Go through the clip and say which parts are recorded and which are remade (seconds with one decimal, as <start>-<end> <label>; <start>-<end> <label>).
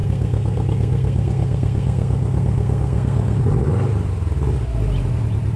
0.0-3.4 remade; 3.4-5.6 recorded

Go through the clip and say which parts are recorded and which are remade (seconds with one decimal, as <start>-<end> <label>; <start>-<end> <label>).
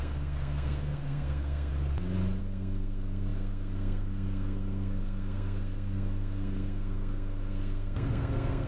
0.0-1.7 remade; 1.7-2.4 recorded; 2.4-8.7 remade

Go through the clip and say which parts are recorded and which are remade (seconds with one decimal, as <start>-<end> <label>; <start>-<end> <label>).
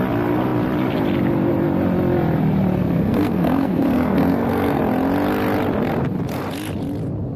0.0-2.8 recorded; 2.8-4.8 remade; 4.8-7.4 recorded